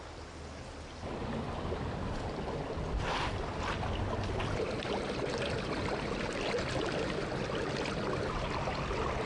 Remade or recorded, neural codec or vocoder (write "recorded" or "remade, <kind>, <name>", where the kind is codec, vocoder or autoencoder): recorded